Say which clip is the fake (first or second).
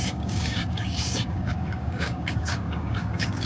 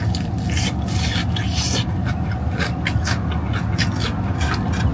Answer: first